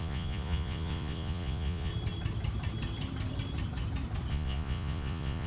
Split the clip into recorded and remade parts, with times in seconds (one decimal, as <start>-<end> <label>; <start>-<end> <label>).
0.0-1.9 remade; 1.9-4.3 recorded; 4.3-5.5 remade